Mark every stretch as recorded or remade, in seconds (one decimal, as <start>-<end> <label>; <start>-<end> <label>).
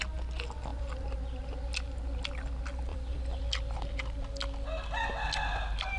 0.0-0.7 recorded; 0.7-1.2 remade; 1.2-2.9 recorded; 2.9-3.4 remade; 3.4-6.0 recorded